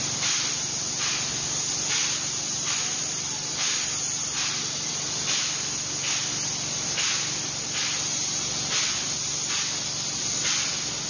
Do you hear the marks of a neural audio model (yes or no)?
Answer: no